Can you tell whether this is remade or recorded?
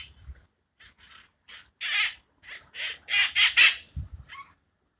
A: recorded